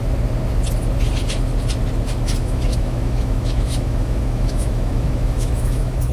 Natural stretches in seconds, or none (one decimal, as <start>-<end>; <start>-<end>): 0.0-2.4